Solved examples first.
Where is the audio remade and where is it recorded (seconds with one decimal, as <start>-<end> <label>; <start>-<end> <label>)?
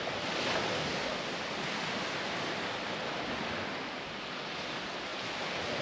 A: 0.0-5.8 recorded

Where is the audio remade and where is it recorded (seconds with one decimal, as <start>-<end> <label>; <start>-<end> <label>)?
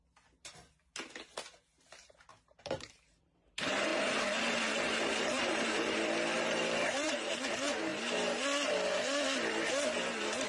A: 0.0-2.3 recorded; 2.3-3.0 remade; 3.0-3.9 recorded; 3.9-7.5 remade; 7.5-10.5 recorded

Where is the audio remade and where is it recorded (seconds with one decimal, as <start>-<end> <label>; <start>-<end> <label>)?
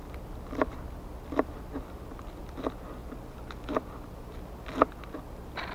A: 0.0-3.0 recorded; 3.0-3.6 remade; 3.6-5.7 recorded